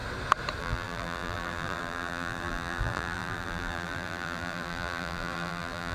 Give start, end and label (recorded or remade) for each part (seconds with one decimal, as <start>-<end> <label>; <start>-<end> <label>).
0.0-0.6 recorded; 0.6-5.9 remade